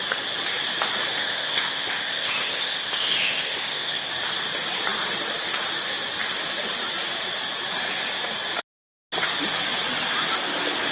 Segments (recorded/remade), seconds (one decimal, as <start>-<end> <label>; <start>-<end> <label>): 0.0-1.2 recorded; 1.2-4.1 remade; 4.1-10.9 recorded